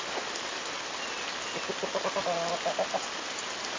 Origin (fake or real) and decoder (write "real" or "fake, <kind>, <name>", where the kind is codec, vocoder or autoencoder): real